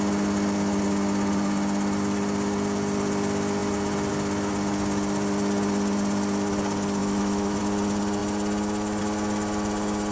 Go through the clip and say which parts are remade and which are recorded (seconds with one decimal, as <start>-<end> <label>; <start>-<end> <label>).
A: 0.0-7.0 recorded; 7.0-7.6 remade; 7.6-10.1 recorded